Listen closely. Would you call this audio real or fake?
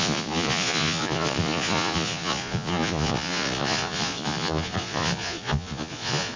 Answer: fake